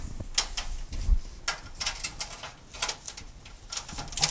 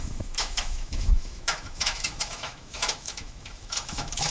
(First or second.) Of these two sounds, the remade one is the second